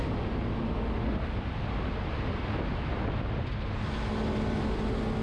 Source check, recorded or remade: recorded